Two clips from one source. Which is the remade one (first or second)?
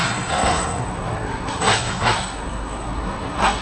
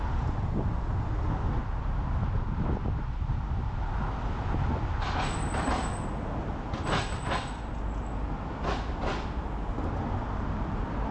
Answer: first